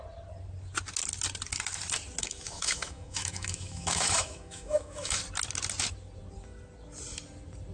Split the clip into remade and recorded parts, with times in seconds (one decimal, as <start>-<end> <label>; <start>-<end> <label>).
0.0-2.2 recorded; 2.2-5.2 remade; 5.2-7.7 recorded